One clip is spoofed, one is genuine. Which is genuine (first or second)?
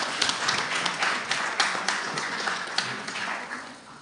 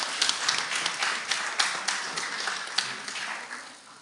second